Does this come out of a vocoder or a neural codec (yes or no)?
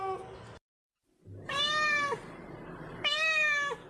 no